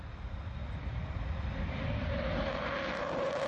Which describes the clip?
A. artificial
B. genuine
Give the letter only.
B